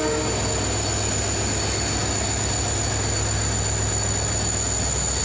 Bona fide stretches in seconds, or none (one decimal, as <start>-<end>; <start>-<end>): 0.0-5.2